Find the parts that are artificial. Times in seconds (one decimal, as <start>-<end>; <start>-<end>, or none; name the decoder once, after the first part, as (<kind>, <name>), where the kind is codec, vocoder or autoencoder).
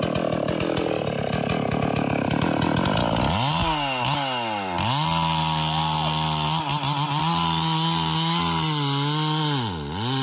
none